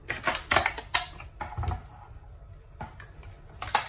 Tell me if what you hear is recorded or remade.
recorded